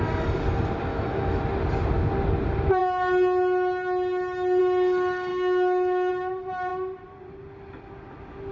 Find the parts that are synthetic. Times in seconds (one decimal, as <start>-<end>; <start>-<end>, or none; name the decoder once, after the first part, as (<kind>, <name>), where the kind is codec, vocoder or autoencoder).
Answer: 0.9-1.4 (autoencoder, DAC-VAE); 5.3-6.1